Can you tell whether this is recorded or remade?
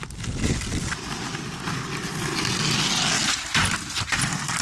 recorded